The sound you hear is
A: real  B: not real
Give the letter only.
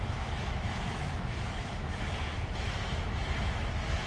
B